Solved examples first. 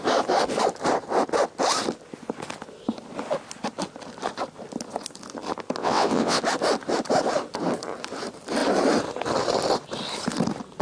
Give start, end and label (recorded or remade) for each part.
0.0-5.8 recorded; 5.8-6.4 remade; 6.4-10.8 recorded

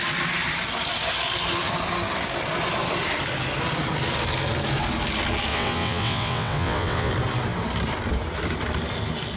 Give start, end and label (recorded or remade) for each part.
0.0-5.5 recorded; 5.5-7.1 remade; 7.1-9.4 recorded

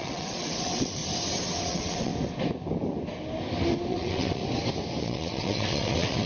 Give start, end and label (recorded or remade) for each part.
0.0-1.0 remade; 1.0-1.6 recorded; 1.6-2.1 remade; 2.1-3.9 recorded; 3.9-4.4 remade; 4.4-5.0 recorded; 5.0-6.3 remade

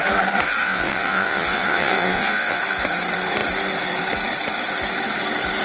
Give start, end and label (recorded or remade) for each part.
0.0-0.6 recorded; 0.6-2.6 remade; 2.6-5.6 recorded

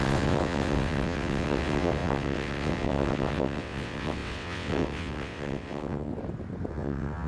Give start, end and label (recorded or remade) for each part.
0.0-6.1 remade; 6.1-6.7 recorded; 6.7-7.3 remade

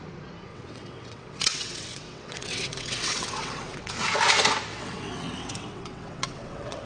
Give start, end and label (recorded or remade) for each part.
0.0-0.5 recorded; 0.5-3.9 remade; 3.9-4.7 recorded; 4.7-6.9 remade

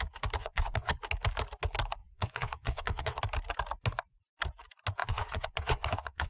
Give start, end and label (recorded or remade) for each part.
0.0-0.4 recorded; 0.4-0.9 remade; 0.9-2.0 recorded; 2.0-3.2 remade; 3.2-5.0 recorded; 5.0-6.3 remade

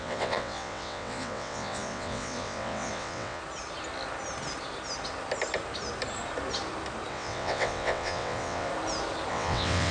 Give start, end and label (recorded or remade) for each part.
0.0-3.4 remade; 3.4-7.1 recorded; 7.1-8.7 remade; 8.7-9.3 recorded; 9.3-9.9 remade